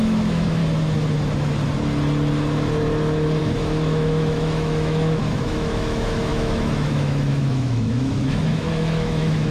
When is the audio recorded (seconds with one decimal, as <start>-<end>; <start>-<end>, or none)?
0.6-3.4